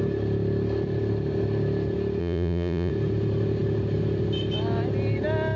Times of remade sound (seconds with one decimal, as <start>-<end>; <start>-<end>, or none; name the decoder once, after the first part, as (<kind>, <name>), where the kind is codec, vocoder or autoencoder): 2.2-2.9 (vocoder, Vocos)